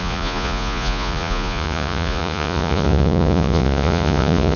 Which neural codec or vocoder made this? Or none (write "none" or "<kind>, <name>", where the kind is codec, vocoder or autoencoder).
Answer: vocoder, Vocos